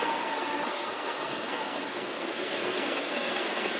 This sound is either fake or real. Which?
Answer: fake